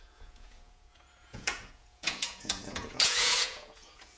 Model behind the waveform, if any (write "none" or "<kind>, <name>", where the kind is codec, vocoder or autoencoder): vocoder, Vocos